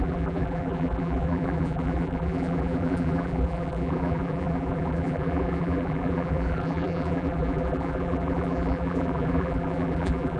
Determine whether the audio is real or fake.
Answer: fake